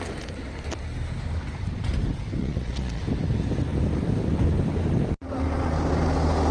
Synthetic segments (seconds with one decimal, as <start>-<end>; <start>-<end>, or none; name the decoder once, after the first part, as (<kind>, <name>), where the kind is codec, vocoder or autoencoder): 2.4-3.0 (vocoder, Vocos)